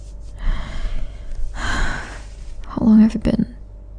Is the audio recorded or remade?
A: recorded